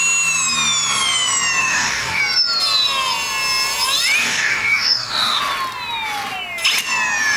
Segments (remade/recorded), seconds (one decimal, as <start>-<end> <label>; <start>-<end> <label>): 0.0-1.6 recorded; 1.6-2.2 remade; 2.2-4.2 recorded; 4.2-5.4 remade; 5.4-7.4 recorded